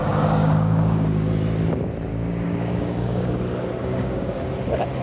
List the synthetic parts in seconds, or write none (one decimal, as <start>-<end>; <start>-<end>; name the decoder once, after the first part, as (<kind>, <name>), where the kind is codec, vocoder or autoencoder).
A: 0.4-1.3 (codec, DAC); 2.1-3.4; 3.8-4.5